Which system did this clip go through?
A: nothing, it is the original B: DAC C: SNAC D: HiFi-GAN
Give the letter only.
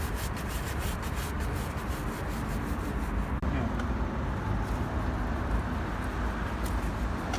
A